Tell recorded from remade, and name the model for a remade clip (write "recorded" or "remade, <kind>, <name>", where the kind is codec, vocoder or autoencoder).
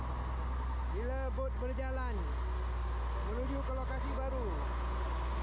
recorded